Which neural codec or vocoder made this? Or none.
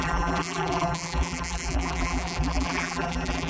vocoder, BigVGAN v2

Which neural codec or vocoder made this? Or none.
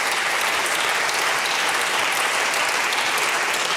vocoder, BigVGAN v2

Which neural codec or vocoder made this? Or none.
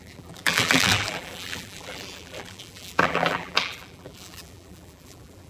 vocoder, BigVGAN v2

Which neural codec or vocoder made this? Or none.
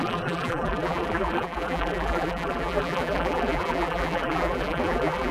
vocoder, BigVGAN v2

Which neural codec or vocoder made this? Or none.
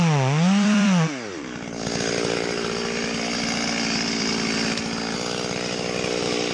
vocoder, BigVGAN v2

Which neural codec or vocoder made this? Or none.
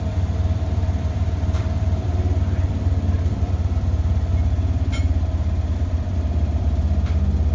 vocoder, BigVGAN v2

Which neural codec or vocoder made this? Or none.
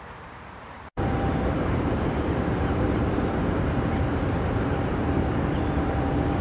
vocoder, BigVGAN v2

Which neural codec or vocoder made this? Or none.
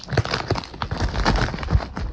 none